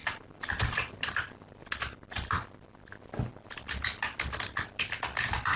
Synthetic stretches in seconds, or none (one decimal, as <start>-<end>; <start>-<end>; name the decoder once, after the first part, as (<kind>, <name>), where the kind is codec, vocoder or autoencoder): none